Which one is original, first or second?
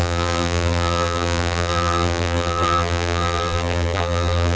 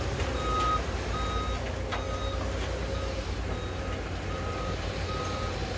second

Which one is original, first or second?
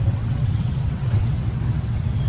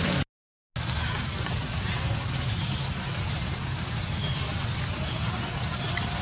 second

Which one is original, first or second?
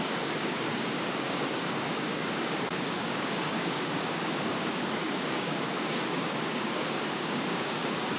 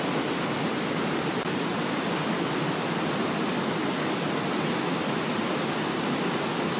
second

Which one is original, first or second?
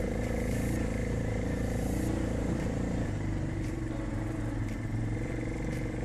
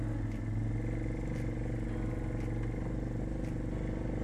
second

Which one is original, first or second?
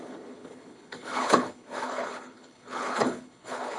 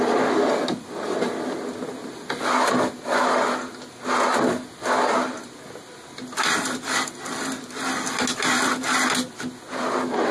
second